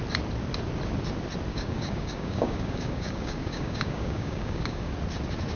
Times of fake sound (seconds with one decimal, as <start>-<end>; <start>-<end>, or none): 1.5-4.9